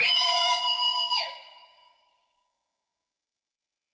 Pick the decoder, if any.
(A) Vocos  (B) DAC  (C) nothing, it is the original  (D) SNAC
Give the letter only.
B